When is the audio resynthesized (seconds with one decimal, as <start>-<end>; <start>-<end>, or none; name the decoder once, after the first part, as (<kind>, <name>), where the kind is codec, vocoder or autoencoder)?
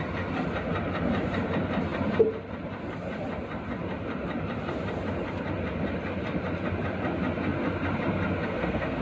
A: 8.4-9.0 (codec, SNAC)